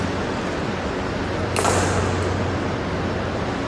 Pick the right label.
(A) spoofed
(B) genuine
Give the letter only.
B